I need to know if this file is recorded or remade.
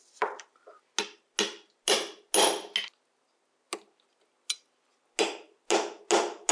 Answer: recorded